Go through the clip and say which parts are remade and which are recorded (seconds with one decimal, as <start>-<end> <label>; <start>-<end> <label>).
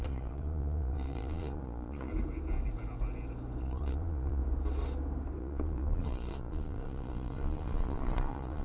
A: 0.0-2.1 remade; 2.1-3.6 recorded; 3.6-4.4 remade; 4.4-5.4 recorded; 5.4-8.6 remade